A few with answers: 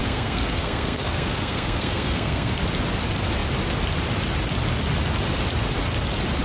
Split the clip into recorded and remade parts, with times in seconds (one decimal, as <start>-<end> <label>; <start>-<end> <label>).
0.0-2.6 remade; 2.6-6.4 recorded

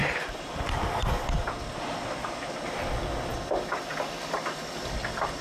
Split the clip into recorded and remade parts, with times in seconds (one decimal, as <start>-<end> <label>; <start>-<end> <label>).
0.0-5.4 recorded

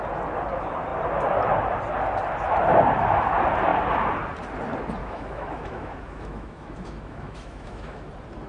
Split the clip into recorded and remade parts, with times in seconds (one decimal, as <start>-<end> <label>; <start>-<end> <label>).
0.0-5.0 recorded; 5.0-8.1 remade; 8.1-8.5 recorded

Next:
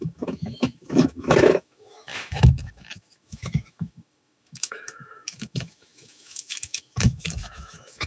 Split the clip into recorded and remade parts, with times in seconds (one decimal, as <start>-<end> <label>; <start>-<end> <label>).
0.0-8.1 remade

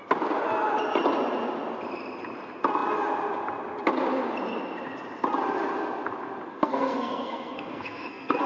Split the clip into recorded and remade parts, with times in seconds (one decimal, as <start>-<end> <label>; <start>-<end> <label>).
0.0-6.5 recorded; 6.5-8.5 remade

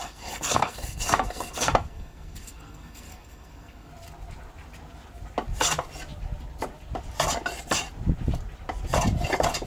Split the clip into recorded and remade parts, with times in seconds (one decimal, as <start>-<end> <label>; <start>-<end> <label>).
0.0-3.9 remade; 3.9-9.7 recorded

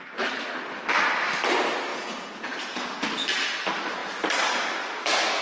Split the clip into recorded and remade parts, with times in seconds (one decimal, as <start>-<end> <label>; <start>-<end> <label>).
0.0-1.9 recorded; 1.9-3.1 remade; 3.1-5.4 recorded

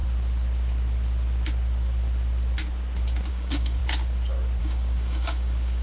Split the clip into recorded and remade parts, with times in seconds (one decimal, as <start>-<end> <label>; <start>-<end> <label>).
0.0-3.3 recorded; 3.3-3.8 remade; 3.8-4.6 recorded; 4.6-5.8 remade